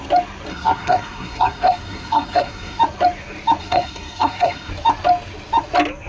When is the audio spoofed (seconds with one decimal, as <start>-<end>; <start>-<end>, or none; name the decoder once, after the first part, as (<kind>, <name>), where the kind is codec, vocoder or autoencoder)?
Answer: 0.5-2.8 (codec, SNAC); 3.6-4.7